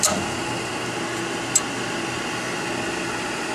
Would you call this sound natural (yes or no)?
yes